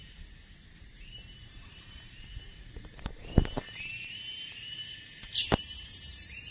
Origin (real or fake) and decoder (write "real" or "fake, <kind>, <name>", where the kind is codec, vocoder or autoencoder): fake, vocoder, BigVGAN v2